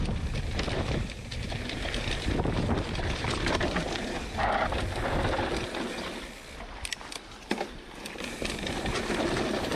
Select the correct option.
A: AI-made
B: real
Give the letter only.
A